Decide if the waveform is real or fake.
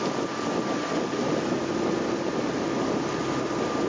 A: real